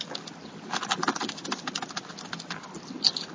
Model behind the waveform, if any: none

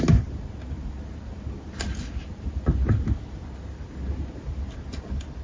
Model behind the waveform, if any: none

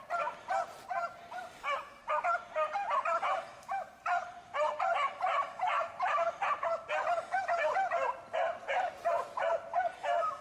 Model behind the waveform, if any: none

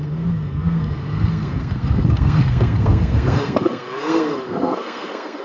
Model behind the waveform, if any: codec, SNAC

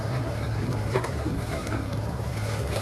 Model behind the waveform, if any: codec, SNAC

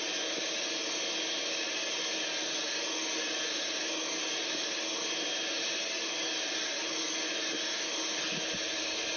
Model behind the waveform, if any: none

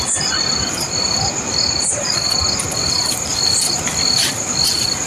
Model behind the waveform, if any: none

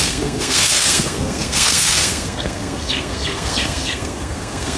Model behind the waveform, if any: codec, SNAC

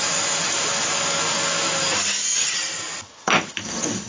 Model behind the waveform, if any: none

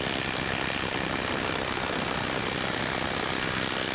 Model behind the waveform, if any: none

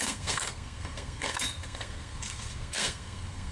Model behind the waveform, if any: codec, SNAC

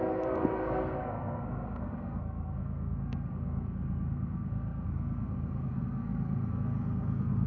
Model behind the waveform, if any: codec, SNAC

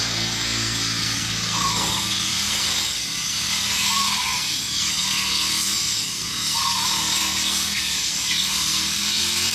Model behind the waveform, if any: codec, SNAC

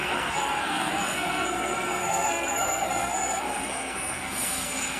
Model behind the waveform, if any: codec, SNAC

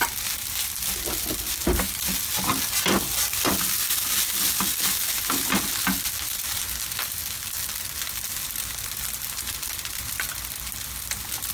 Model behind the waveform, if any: none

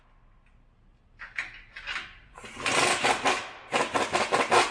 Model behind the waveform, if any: none